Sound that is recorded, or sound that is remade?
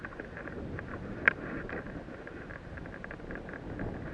recorded